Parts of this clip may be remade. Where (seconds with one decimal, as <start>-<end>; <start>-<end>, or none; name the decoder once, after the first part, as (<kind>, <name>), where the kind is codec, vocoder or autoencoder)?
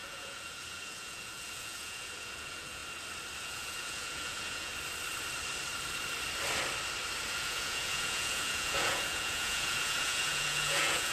0.0-2.8 (vocoder, Vocos); 3.4-4.7; 7.3-11.1